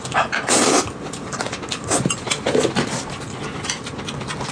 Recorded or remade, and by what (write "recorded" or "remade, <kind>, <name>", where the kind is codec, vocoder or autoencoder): recorded